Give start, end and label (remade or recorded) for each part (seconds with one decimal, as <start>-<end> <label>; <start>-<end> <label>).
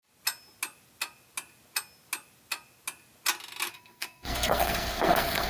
0.0-3.7 recorded; 3.7-5.5 remade